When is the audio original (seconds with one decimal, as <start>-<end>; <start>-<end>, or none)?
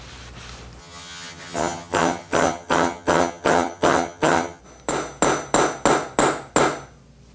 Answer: 0.0-0.8; 4.6-7.3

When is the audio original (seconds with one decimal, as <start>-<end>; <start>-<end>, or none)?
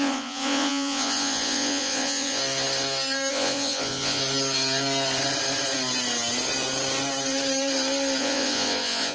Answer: 2.4-3.3; 4.2-8.2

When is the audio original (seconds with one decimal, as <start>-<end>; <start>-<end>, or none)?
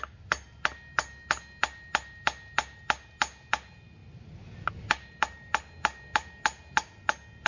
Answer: 0.0-7.5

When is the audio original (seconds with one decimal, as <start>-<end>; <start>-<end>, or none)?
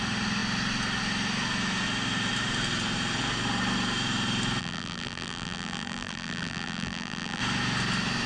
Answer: 0.0-4.6; 7.4-8.3